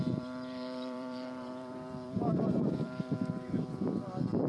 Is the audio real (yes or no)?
no